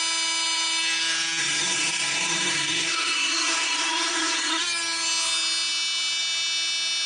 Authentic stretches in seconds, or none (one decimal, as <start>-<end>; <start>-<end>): 0.0-1.4; 4.6-7.1